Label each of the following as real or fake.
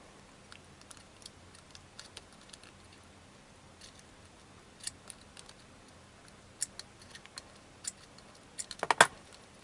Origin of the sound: real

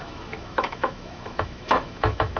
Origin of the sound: fake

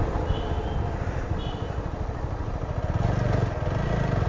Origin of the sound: real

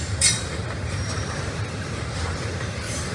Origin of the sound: fake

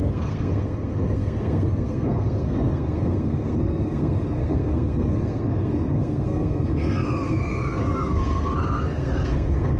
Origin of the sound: fake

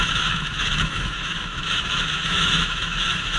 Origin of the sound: fake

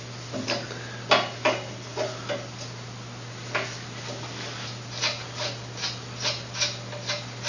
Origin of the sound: real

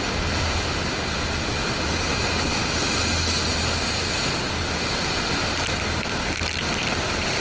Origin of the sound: real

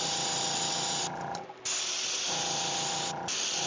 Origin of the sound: fake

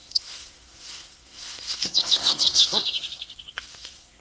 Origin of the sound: fake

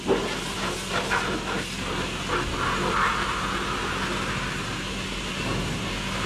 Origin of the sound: real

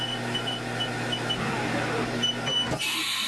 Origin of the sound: real